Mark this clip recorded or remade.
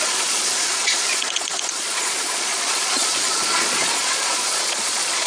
remade